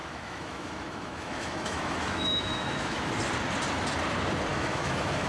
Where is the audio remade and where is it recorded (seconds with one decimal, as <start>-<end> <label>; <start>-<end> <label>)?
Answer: 0.0-3.1 remade; 3.1-4.5 recorded; 4.5-5.3 remade